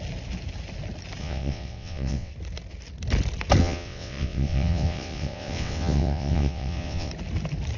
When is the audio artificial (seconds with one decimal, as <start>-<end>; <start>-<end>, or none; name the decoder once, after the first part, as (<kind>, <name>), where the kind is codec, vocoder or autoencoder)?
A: 1.2-2.3 (vocoder, WaveNeXt); 3.6-7.1